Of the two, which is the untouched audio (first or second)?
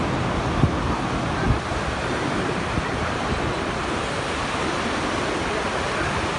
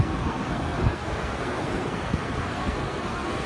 first